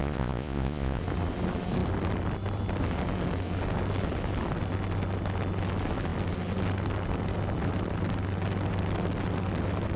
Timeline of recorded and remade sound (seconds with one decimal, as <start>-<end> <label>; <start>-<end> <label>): 0.0-1.0 remade; 1.0-10.0 recorded

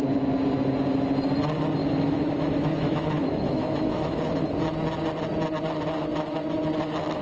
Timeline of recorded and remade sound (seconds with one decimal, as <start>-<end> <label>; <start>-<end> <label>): 0.0-1.8 recorded; 1.8-4.3 remade; 4.3-7.2 recorded

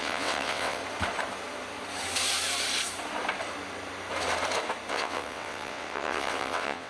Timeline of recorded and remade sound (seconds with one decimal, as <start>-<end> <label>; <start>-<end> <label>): 0.0-0.8 remade; 0.8-4.9 recorded; 4.9-6.9 remade

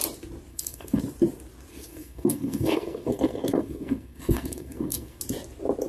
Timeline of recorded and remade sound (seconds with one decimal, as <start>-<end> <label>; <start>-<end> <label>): 0.0-0.5 recorded; 0.5-1.0 remade; 1.0-1.7 recorded; 1.7-5.2 remade; 5.2-5.9 recorded

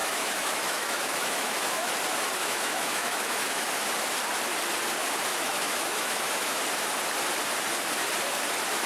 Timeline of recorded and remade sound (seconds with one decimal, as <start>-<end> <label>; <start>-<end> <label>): 0.0-1.9 remade; 1.9-2.4 recorded; 2.4-3.7 remade; 3.7-5.3 recorded; 5.3-6.6 remade; 6.6-8.9 recorded

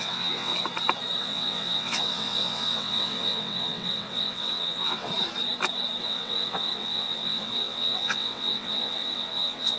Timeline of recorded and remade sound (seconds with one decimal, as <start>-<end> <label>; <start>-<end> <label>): 0.0-0.5 remade; 0.5-1.2 recorded; 1.2-5.1 remade; 5.1-6.0 recorded; 6.0-9.8 remade

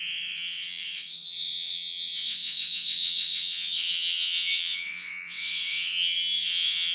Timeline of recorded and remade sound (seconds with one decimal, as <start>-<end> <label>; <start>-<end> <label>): 0.0-6.9 remade